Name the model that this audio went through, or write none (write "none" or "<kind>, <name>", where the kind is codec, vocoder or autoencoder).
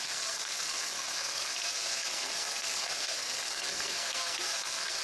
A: codec, SNAC